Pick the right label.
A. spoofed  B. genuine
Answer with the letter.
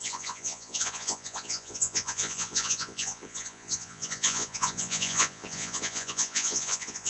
A